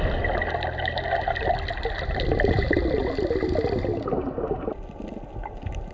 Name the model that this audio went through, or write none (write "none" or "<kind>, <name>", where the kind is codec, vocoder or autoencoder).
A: none